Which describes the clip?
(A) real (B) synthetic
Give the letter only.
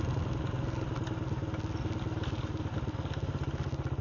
A